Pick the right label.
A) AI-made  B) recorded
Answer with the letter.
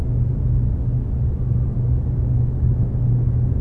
B